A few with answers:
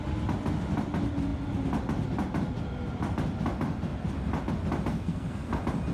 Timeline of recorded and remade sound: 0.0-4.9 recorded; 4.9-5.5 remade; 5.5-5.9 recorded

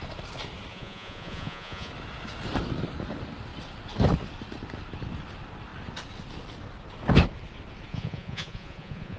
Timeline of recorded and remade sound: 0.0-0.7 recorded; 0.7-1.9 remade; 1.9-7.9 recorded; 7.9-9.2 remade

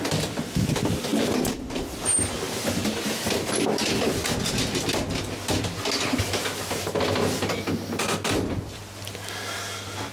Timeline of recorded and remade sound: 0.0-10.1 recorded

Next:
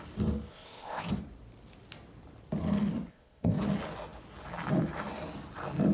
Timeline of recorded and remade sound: 0.0-0.5 recorded; 0.5-1.1 remade; 1.1-3.1 recorded; 3.1-3.6 remade; 3.6-5.9 recorded

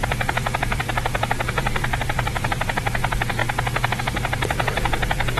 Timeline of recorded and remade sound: 0.0-3.4 remade; 3.4-4.0 recorded; 4.0-5.4 remade